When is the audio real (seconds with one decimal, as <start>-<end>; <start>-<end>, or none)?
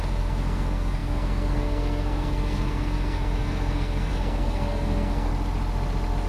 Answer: 5.3-6.3